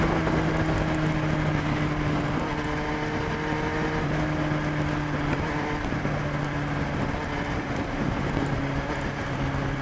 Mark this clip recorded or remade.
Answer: recorded